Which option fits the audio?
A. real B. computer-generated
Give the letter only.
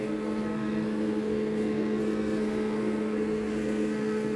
B